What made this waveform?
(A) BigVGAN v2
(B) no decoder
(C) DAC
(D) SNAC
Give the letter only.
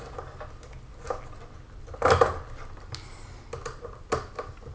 B